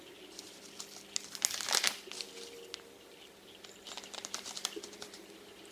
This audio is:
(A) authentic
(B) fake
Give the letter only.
A